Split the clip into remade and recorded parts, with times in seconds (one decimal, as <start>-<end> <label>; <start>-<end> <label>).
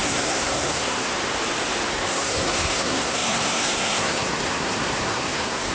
0.0-1.1 remade; 1.1-1.9 recorded; 1.9-5.7 remade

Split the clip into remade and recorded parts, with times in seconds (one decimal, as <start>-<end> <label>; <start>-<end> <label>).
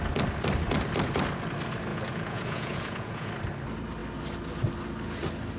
0.0-1.9 recorded; 1.9-3.3 remade; 3.3-5.6 recorded